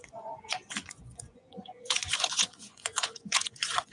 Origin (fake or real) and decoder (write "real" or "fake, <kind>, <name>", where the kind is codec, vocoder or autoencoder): fake, vocoder, Vocos